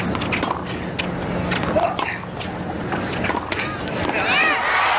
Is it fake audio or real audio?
real